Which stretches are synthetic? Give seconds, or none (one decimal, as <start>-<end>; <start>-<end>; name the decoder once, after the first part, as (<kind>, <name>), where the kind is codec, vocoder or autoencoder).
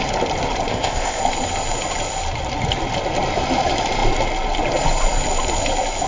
0.7-1.2 (codec, ZipCodec)